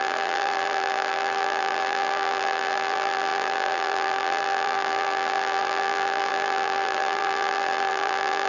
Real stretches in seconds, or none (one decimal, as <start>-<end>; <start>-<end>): none

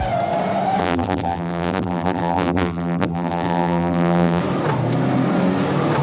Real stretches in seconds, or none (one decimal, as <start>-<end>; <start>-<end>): 0.0-0.8; 4.4-6.0